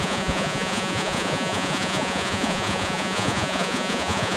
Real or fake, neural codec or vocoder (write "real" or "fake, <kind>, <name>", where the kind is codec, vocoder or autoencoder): fake, vocoder, Vocos